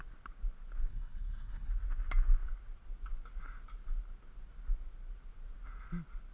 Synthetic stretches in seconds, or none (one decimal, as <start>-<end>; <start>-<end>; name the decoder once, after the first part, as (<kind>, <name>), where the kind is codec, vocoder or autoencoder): 0.9-1.7 (codec, SNAC)